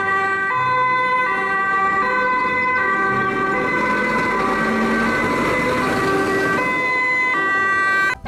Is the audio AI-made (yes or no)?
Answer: no